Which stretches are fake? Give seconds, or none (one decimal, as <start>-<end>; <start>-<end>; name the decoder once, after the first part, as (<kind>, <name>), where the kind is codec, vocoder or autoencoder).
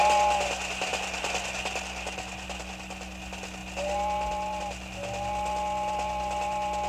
none